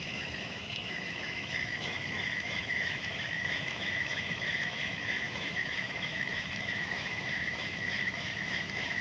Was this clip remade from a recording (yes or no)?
yes